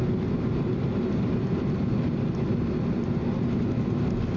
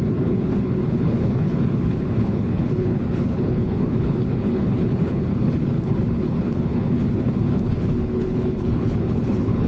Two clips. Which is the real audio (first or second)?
first